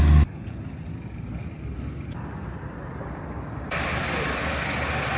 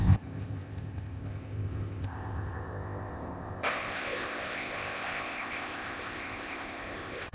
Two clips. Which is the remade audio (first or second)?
second